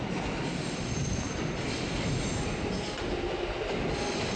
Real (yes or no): yes